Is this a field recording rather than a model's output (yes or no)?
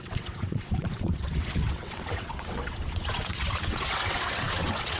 no